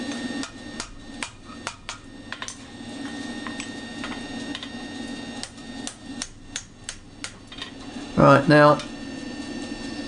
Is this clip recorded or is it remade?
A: recorded